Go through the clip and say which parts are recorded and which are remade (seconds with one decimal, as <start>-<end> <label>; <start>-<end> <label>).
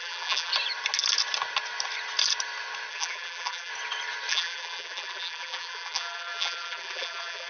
0.0-0.5 remade; 0.5-2.9 recorded; 2.9-3.7 remade; 3.7-4.3 recorded; 4.3-7.5 remade